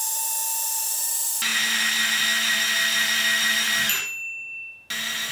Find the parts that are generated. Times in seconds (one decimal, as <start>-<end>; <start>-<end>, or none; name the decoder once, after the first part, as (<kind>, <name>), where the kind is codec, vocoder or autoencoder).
0.4-1.0 (vocoder, BigVGAN v2)